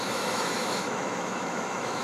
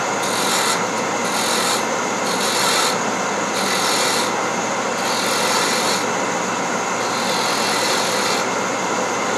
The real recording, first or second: second